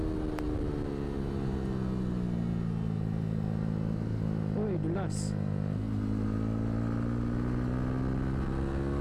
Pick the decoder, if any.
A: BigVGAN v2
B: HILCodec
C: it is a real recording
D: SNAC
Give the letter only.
C